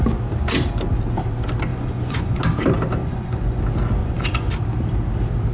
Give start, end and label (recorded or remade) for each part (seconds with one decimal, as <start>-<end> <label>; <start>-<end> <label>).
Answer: 0.0-1.7 recorded; 1.7-2.4 remade; 2.4-3.0 recorded; 3.0-3.6 remade; 3.6-4.0 recorded; 4.0-4.5 remade; 4.5-5.5 recorded